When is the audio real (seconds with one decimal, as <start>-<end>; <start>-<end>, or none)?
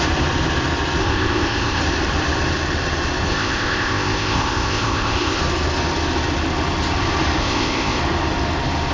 0.0-1.0; 1.8-3.3; 5.4-7.4; 8.0-8.9